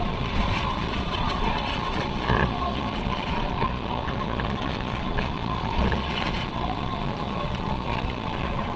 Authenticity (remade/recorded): remade